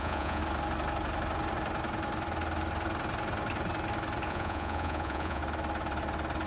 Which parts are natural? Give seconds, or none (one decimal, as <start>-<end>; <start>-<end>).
0.4-4.3; 5.4-6.5